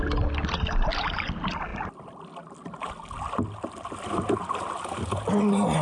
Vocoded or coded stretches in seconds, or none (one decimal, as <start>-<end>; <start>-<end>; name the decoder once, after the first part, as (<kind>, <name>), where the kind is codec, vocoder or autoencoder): none